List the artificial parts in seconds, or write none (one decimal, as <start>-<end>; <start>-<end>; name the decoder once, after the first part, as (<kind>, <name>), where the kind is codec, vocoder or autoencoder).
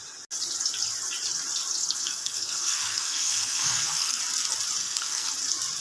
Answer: 1.8-4.2 (codec, SNAC); 4.8-5.3